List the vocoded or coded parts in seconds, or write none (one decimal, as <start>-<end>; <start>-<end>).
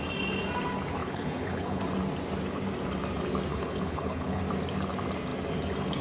1.0-1.8; 3.5-4.4